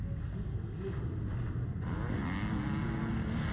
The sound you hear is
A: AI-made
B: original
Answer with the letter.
B